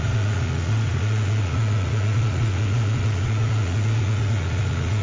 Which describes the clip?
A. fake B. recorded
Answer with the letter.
A